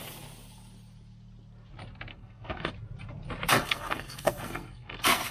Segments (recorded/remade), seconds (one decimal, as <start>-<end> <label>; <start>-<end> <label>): 0.0-2.1 recorded; 2.1-2.7 remade; 2.7-3.5 recorded; 3.5-5.3 remade